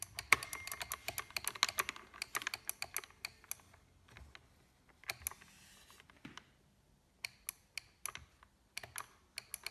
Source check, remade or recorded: recorded